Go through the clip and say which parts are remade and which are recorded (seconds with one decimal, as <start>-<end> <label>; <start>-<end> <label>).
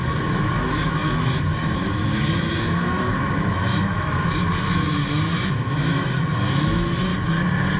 0.0-7.1 remade; 7.1-7.8 recorded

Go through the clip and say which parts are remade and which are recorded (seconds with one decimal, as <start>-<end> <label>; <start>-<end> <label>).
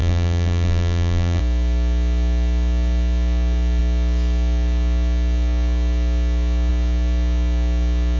0.0-1.4 remade; 1.4-8.2 recorded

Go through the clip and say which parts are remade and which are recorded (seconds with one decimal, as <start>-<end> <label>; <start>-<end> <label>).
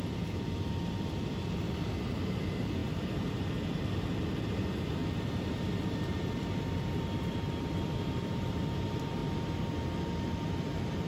0.0-9.2 remade; 9.2-9.8 recorded; 9.8-11.1 remade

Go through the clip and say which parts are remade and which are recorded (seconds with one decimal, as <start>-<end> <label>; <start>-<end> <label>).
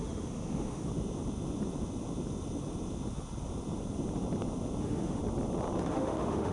0.0-0.9 remade; 0.9-4.8 recorded; 4.8-5.2 remade; 5.2-5.8 recorded; 5.8-6.5 remade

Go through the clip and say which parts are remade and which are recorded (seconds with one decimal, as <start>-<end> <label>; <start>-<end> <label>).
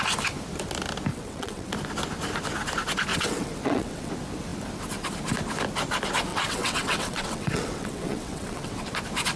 0.0-1.1 recorded; 1.1-1.7 remade; 1.7-3.1 recorded; 3.1-4.1 remade; 4.1-6.3 recorded; 6.3-8.9 remade; 8.9-9.4 recorded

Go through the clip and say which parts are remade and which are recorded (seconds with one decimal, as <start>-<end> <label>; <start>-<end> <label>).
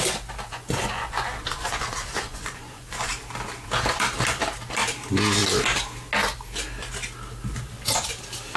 0.0-0.5 recorded; 0.5-3.1 remade; 3.1-8.6 recorded